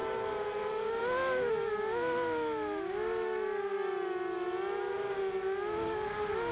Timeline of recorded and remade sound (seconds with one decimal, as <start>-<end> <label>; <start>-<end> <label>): 0.0-0.6 recorded; 0.6-1.0 remade; 1.0-4.8 recorded; 4.8-5.2 remade; 5.2-6.5 recorded